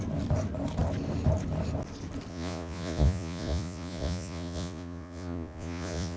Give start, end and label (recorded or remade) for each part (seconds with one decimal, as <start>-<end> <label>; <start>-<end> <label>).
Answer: 0.0-2.3 recorded; 2.3-6.2 remade